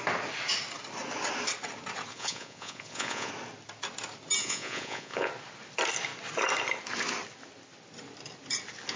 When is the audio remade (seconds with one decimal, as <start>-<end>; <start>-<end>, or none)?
2.1-3.3; 4.4-5.3